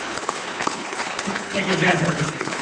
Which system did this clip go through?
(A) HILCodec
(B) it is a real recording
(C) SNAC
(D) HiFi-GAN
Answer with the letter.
A